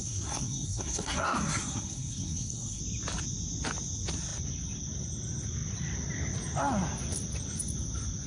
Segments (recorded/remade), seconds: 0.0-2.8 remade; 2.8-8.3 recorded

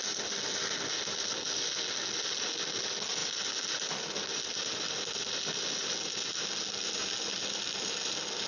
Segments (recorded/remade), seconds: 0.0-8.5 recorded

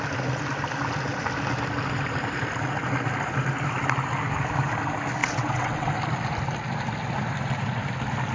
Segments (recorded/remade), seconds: 0.0-5.2 recorded; 5.2-5.9 remade; 5.9-8.3 recorded

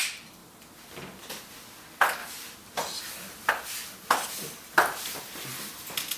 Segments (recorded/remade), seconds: 0.0-0.4 recorded; 0.4-1.5 remade; 1.5-2.2 recorded; 2.2-3.5 remade; 3.5-6.2 recorded

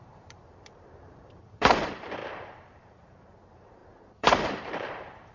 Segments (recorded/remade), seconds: 0.0-5.3 remade

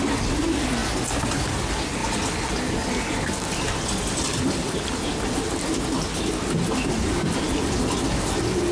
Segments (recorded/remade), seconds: 0.0-8.7 recorded

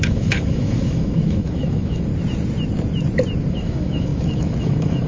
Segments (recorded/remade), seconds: 0.0-2.1 remade; 2.1-3.5 recorded; 3.5-5.1 remade